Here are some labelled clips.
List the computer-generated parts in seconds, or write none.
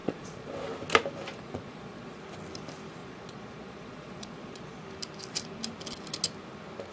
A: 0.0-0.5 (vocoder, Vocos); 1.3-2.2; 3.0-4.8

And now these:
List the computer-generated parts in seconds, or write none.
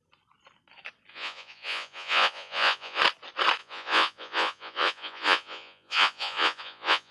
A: 1.1-3.0 (vocoder, Vocos); 3.6-7.1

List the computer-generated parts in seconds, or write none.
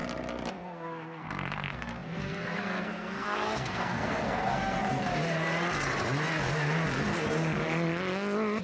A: 0.5-5.1 (codec, SNAC)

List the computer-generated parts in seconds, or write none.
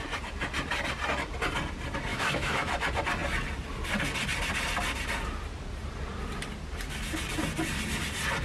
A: 2.1-2.7 (autoencoder, DAC-VAE)